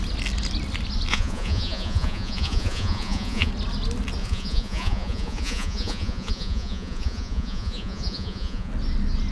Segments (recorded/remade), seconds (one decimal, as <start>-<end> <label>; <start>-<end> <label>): 0.0-1.1 recorded; 1.1-3.5 remade; 3.5-4.2 recorded; 4.2-8.7 remade; 8.7-9.3 recorded